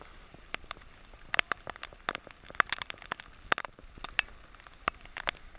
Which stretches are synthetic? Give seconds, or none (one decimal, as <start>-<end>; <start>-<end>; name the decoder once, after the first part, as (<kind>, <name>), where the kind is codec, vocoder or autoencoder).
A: 0.0-1.9 (vocoder, BigVGAN v2)